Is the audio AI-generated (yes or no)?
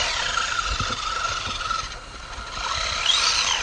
no